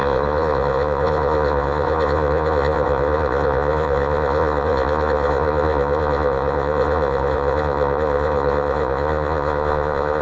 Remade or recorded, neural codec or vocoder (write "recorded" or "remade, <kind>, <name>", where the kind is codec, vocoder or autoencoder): remade, vocoder, Vocos